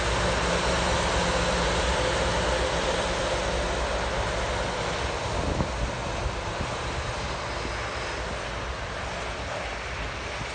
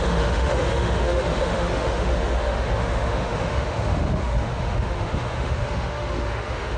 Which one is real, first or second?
first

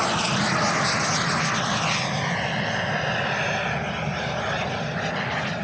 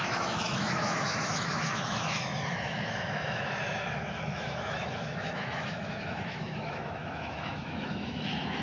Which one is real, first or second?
first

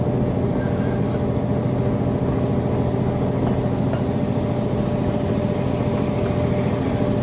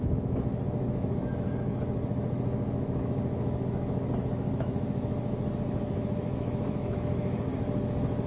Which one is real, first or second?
first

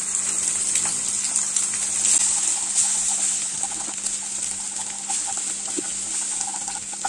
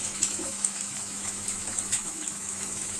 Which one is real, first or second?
first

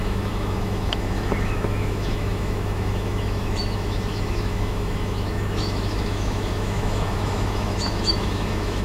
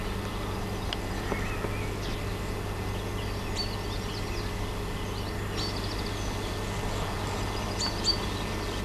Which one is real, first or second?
second